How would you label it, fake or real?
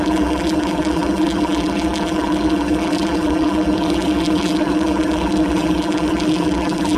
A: fake